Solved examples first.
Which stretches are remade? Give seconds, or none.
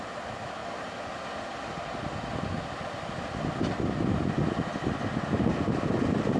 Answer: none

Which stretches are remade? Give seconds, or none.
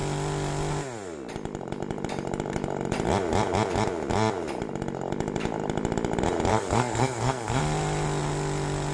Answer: 6.5-7.6 (codec, SNAC)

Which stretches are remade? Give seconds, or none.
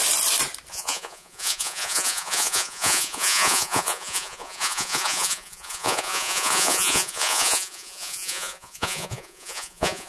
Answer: 0.7-10.1 (vocoder, Vocos)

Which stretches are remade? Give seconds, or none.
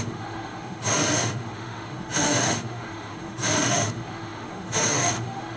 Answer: 0.0-5.6 (autoencoder, DAC-VAE)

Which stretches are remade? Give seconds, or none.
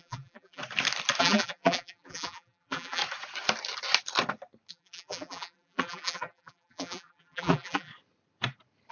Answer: 0.0-0.6 (vocoder, BigVGAN v2); 1.2-3.0; 4.7-7.9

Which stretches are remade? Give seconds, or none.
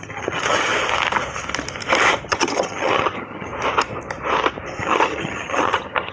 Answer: 0.0-0.7 (vocoder, HiFi-GAN); 2.3-3.5; 4.8-6.1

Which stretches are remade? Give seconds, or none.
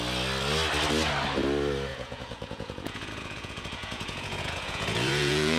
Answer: 1.9-5.6 (vocoder, Vocos)